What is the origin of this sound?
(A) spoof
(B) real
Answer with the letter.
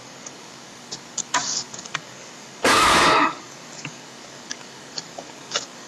A